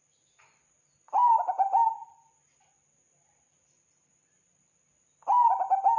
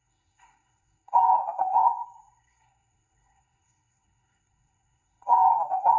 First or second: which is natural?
first